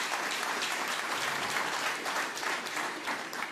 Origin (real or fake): fake